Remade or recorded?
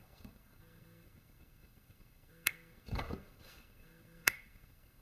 remade